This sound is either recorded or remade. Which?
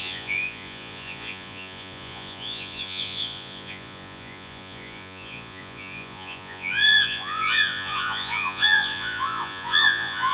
remade